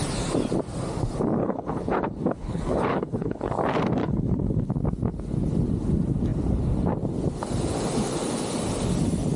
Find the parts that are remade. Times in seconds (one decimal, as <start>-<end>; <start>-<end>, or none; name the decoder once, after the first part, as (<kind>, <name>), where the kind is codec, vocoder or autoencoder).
1.4-3.5 (codec, HILCodec); 4.0-4.7